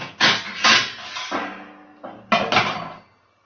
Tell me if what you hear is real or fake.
real